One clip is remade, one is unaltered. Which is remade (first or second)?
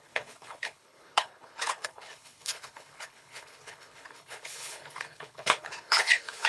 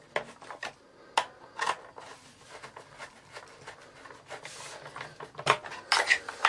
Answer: first